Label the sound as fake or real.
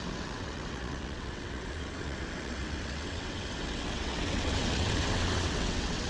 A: fake